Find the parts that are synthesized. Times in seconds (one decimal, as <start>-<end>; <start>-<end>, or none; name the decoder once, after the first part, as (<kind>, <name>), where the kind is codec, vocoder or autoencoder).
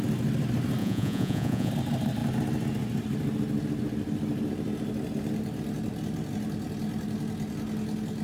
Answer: 0.8-1.7 (vocoder, Vocos)